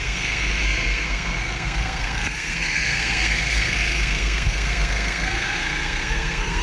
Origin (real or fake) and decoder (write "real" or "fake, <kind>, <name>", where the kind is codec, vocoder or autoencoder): fake, codec, SNAC